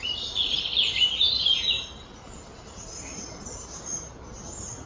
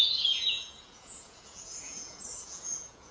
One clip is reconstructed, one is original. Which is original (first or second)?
first